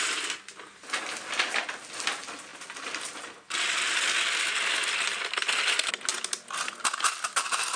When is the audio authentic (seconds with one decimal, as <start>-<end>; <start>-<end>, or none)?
0.0-7.8